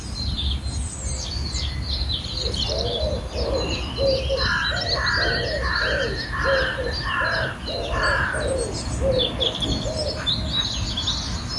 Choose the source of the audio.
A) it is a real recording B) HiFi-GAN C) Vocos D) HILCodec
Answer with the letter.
A